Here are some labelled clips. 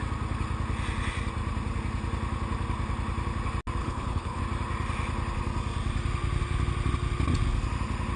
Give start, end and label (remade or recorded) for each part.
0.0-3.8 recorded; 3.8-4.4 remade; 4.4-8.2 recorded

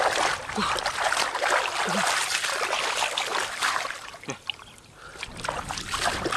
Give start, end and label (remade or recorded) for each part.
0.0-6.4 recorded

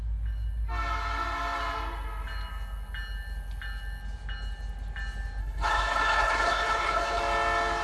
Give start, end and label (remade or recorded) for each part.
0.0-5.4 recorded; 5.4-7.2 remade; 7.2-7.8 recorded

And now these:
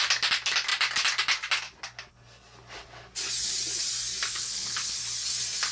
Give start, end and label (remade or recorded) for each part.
0.0-4.3 recorded; 4.3-5.0 remade; 5.0-5.7 recorded